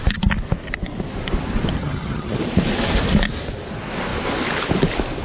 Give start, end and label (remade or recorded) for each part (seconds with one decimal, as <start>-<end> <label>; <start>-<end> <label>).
0.0-1.8 recorded; 1.8-2.4 remade; 2.4-5.2 recorded

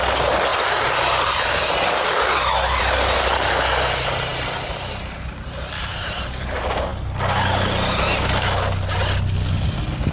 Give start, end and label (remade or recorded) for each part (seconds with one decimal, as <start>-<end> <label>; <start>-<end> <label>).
0.0-10.1 recorded

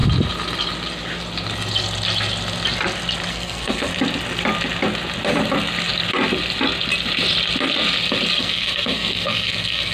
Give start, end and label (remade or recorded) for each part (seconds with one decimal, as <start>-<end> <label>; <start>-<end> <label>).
0.0-3.3 recorded; 3.3-3.9 remade; 3.9-8.4 recorded; 8.4-9.9 remade